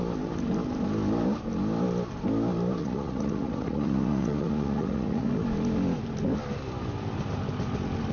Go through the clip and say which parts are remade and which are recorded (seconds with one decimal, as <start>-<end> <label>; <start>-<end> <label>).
0.0-2.8 recorded; 2.8-5.3 remade; 5.3-8.1 recorded